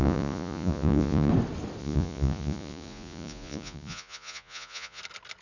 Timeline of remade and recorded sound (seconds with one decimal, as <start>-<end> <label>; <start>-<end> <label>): 0.0-1.3 remade; 1.3-1.8 recorded; 1.8-5.0 remade; 5.0-5.4 recorded